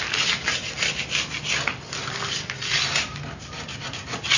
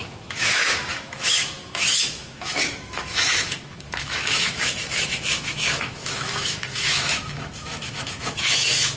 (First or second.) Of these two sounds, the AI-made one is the second